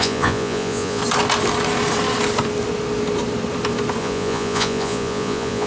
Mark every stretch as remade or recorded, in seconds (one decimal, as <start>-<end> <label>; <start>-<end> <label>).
0.0-1.0 remade; 1.0-4.0 recorded; 4.0-5.7 remade